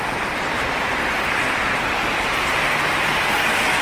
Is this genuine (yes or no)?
yes